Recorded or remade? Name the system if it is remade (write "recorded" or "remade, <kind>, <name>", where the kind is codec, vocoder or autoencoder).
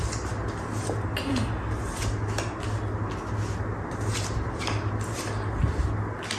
recorded